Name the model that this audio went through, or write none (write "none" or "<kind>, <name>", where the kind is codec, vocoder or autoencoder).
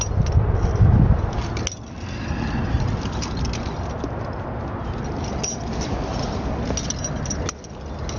none